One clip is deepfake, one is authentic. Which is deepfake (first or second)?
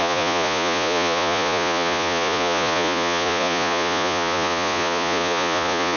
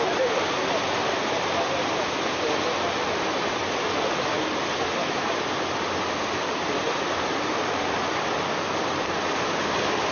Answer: first